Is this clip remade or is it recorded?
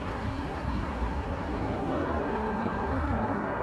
remade